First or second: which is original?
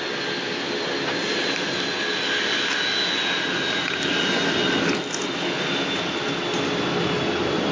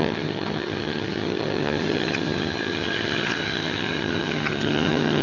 first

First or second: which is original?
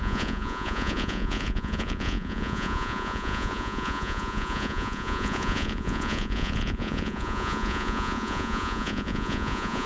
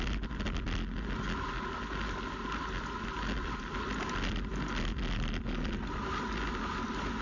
second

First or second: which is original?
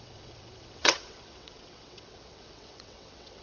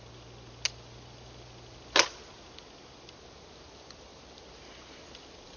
second